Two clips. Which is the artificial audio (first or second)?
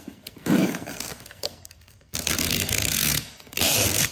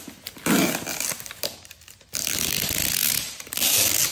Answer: first